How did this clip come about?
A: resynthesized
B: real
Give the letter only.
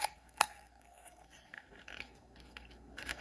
A